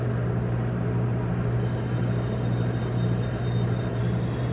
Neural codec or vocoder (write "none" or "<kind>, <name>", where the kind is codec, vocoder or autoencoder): none